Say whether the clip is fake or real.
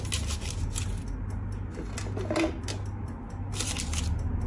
real